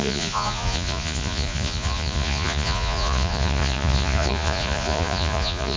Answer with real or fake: fake